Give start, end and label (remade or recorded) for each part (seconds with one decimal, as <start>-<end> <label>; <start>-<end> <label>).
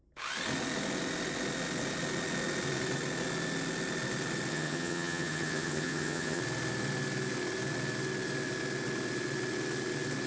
0.0-4.5 recorded; 4.5-6.4 remade; 6.4-10.3 recorded